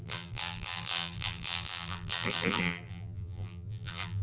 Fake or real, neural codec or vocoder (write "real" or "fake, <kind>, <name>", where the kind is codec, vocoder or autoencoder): fake, vocoder, BigVGAN v2